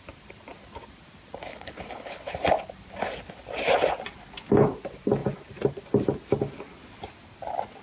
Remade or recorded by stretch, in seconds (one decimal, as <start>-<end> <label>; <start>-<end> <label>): 0.0-1.5 recorded; 1.5-2.3 remade; 2.3-7.8 recorded